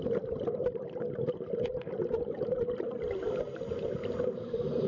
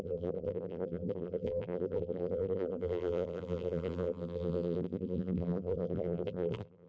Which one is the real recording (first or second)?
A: first